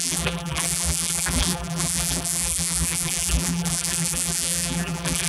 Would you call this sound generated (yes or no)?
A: yes